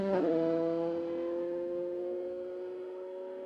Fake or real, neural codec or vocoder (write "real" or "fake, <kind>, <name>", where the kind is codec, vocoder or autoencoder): fake, autoencoder, DAC-VAE